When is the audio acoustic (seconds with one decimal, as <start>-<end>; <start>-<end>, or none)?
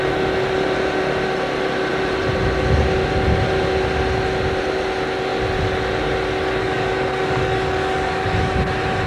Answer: 0.0-6.6; 8.6-9.1